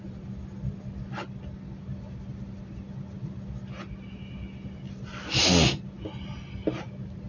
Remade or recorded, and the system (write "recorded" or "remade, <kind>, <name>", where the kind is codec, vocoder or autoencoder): recorded